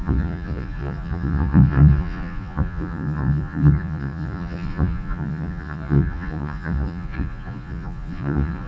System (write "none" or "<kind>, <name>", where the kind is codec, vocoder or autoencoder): vocoder, Vocos